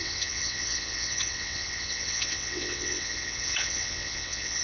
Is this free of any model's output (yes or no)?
no